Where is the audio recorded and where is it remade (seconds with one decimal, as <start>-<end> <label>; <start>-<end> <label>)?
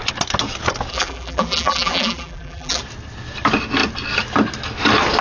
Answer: 0.0-0.9 recorded; 0.9-2.8 remade; 2.8-5.2 recorded